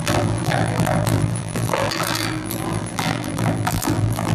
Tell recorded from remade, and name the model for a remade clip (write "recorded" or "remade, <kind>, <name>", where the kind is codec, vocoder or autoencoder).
remade, vocoder, BigVGAN v2